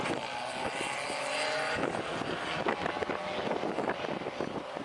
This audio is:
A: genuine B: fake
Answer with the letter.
A